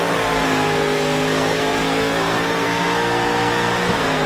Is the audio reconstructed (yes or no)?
yes